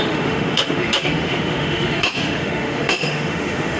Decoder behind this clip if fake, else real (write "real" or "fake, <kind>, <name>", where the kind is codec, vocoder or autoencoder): fake, autoencoder, DAC-VAE